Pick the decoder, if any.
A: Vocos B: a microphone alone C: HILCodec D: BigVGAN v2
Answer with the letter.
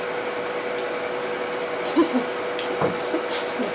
B